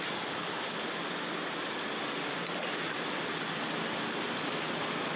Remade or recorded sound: recorded